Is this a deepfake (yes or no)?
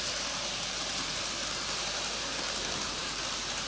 yes